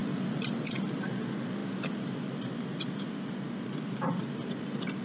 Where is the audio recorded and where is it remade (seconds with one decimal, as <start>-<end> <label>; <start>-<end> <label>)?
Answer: 0.0-0.8 remade; 0.8-5.0 recorded